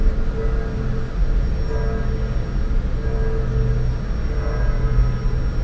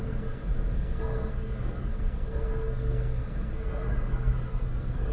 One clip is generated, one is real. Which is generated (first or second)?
second